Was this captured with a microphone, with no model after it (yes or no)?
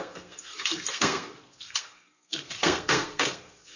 no